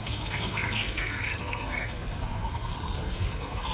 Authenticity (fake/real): fake